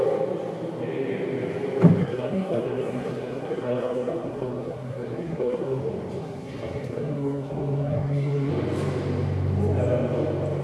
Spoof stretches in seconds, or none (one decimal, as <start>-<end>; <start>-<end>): 2.0-5.8; 6.2-8.5